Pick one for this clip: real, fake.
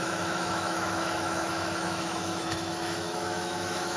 fake